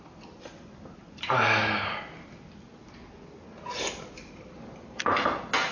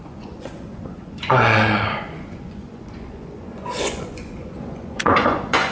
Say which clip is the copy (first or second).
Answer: second